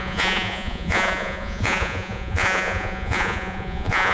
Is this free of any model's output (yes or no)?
no